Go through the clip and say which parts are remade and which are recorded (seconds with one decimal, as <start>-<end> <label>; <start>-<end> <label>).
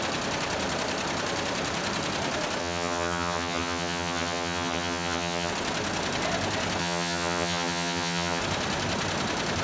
0.0-2.6 recorded; 2.6-5.5 remade; 5.5-6.8 recorded; 6.8-8.4 remade; 8.4-9.6 recorded